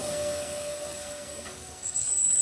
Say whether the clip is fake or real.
fake